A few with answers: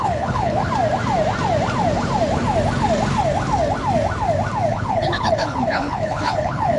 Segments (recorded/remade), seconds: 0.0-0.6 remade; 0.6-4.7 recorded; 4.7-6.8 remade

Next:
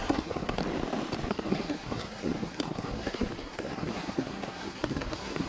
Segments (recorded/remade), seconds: 0.0-0.6 remade; 0.6-1.3 recorded; 1.3-5.5 remade